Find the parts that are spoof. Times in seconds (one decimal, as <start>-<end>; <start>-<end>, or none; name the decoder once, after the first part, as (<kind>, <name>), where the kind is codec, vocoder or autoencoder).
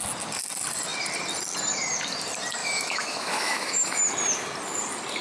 2.6-4.0 (autoencoder, DAC-VAE)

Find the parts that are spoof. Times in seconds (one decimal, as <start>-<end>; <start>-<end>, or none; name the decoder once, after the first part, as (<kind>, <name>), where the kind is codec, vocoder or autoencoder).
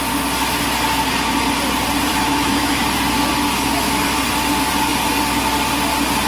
2.1-2.7 (autoencoder, DAC-VAE)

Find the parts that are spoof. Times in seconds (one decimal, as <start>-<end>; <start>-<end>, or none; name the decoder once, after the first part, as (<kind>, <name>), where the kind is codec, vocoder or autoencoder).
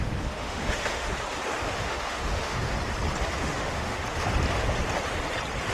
0.0-1.1 (autoencoder, DAC-VAE); 1.6-2.7; 3.4-4.0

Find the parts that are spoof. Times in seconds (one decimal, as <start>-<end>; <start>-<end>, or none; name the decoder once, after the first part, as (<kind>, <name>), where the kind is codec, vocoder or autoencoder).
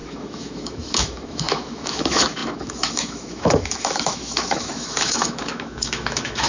0.0-6.5 (autoencoder, DAC-VAE)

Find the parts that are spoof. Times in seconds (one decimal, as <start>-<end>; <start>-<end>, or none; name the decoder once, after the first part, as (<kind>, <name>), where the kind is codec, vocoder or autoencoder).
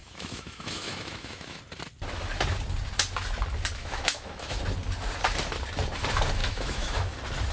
0.0-1.6 (autoencoder, DAC-VAE); 3.8-4.6; 6.4-7.1